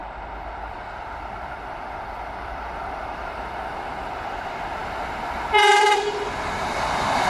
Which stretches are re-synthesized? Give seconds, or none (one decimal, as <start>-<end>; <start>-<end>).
1.5-4.8; 5.7-7.3